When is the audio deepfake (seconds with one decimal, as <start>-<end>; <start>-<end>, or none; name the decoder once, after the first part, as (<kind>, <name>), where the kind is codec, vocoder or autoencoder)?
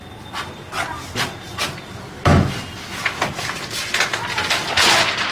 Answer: none